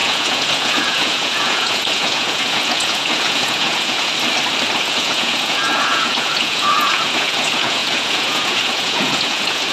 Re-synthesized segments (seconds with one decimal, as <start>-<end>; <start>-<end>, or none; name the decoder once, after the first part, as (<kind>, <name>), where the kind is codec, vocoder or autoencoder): 0.0-4.1 (vocoder, Vocos); 4.7-9.7